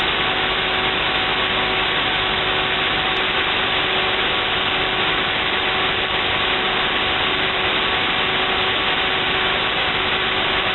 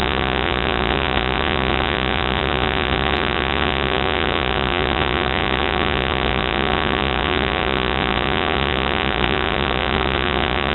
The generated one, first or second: second